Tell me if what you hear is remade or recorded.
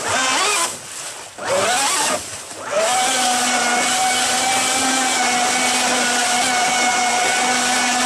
recorded